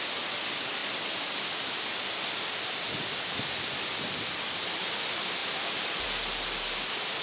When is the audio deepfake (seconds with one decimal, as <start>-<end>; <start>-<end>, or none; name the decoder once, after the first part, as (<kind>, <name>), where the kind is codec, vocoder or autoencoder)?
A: none